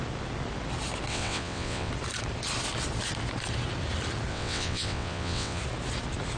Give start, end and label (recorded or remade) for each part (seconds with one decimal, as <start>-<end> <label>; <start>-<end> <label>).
0.0-1.1 recorded; 1.1-1.9 remade; 1.9-4.3 recorded; 4.3-5.6 remade; 5.6-6.4 recorded